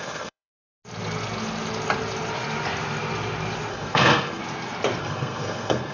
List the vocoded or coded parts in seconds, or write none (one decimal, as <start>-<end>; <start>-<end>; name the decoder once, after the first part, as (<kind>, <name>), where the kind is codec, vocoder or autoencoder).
0.0-0.5 (codec, SNAC); 3.7-4.4; 5.0-5.9